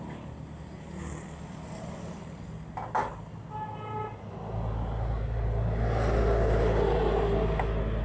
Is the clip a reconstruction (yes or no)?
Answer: no